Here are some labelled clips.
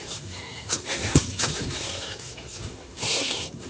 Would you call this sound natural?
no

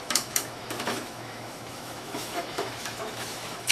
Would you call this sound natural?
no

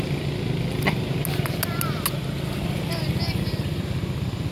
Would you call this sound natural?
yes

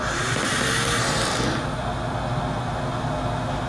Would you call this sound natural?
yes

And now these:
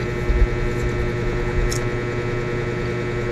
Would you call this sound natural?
yes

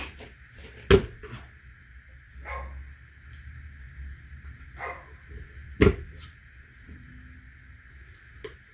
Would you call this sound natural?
yes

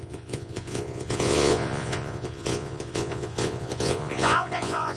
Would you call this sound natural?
no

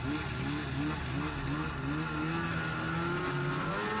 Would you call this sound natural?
yes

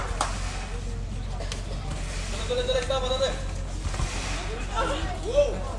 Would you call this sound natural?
yes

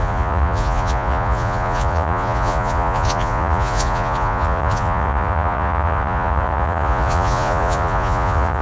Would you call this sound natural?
no